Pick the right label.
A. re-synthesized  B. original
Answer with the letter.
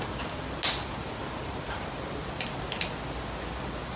B